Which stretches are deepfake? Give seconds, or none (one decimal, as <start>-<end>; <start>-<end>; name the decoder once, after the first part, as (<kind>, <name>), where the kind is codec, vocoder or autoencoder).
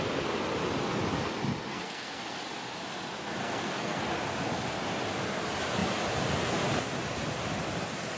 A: 1.7-2.4 (codec, SNAC); 3.4-4.0